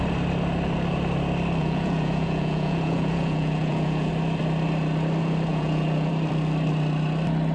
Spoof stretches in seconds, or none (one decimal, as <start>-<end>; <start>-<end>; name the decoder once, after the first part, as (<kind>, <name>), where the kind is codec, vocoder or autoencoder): 1.6-4.1 (vocoder, Vocos); 5.5-6.1